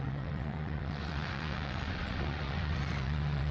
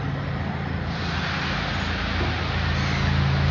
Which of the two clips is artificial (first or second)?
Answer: first